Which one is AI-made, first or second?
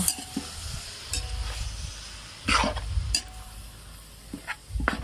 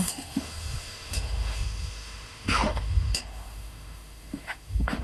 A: second